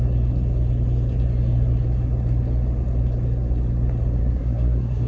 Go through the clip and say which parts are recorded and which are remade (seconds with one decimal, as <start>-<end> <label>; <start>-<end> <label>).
0.0-4.2 recorded; 4.2-5.1 remade